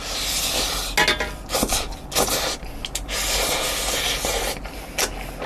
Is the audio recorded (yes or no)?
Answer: yes